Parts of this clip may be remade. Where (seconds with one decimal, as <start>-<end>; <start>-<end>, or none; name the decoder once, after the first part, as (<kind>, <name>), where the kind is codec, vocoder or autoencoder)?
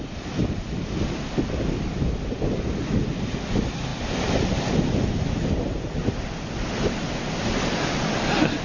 none